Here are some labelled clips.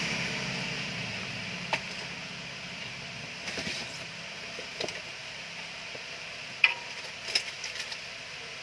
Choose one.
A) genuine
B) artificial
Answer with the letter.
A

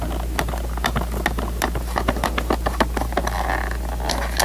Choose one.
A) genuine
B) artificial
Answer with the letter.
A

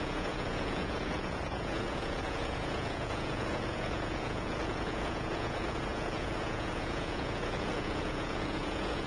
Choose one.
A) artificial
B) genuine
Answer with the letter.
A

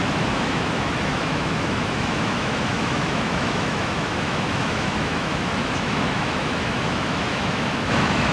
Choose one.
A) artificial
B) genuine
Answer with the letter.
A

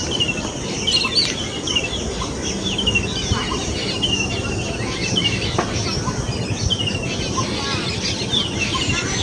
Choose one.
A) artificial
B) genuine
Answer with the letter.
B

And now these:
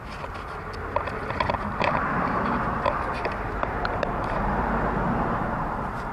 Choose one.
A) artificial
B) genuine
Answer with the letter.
A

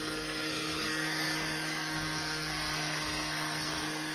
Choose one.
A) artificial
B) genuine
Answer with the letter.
A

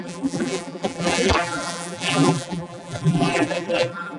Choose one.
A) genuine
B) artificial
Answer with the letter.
B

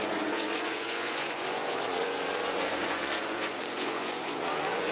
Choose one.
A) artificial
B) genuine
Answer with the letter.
A